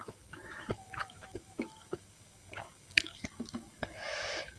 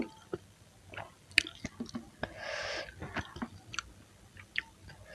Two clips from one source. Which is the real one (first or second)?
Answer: second